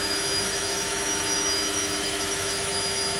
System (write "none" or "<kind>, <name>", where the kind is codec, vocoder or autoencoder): autoencoder, DAC-VAE